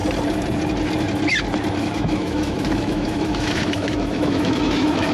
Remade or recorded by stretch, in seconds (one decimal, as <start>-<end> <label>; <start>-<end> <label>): 0.0-1.8 recorded; 1.8-5.1 remade